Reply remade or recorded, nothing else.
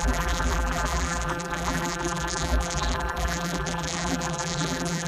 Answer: remade